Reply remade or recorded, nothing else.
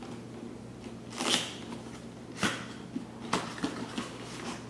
recorded